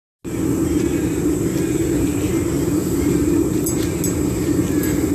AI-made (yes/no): no